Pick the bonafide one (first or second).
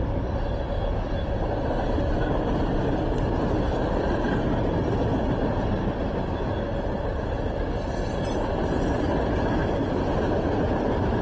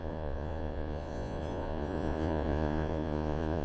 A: first